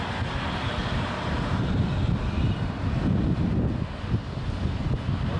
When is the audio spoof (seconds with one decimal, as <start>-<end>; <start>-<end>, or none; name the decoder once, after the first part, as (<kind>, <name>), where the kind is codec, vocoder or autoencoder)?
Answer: 0.8-1.8 (vocoder, BigVGAN v2)